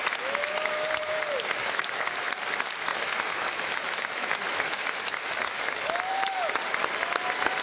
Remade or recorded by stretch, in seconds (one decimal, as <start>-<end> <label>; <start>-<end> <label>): 0.0-0.4 recorded; 0.4-2.3 remade; 2.3-2.9 recorded; 2.9-6.6 remade; 6.6-7.6 recorded